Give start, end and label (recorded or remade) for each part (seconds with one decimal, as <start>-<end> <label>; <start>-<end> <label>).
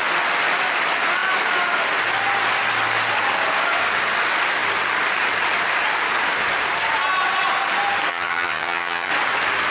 0.0-8.1 recorded; 8.1-9.1 remade; 9.1-9.7 recorded